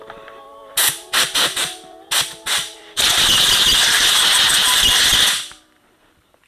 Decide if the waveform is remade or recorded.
remade